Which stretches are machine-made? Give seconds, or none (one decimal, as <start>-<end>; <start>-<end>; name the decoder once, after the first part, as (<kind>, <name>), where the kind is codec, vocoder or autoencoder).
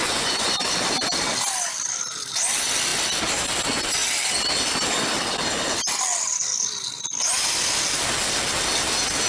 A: 0.0-0.7 (vocoder, Vocos)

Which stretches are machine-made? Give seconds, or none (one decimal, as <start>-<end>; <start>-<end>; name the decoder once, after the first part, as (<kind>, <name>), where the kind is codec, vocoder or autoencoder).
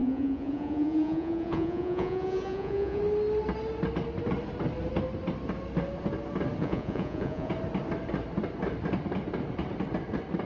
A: 0.0-3.0 (vocoder, Vocos); 6.6-7.5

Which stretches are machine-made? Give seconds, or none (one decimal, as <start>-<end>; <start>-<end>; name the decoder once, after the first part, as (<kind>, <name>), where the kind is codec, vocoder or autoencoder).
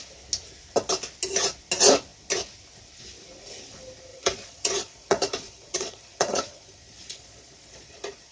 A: 4.1-8.3 (vocoder, Vocos)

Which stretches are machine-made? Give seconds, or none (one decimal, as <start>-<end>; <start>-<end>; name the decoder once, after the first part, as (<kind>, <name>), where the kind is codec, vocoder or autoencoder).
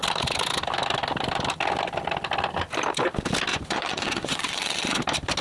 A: 3.5-5.0 (vocoder, Vocos)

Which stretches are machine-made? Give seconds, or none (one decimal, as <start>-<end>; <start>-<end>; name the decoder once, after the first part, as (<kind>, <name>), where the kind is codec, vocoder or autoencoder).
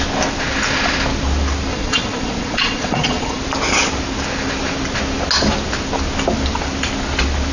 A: 1.7-3.4 (vocoder, Vocos)